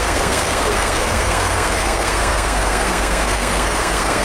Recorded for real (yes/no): no